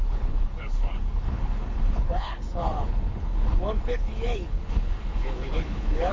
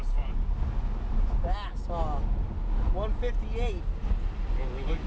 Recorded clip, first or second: second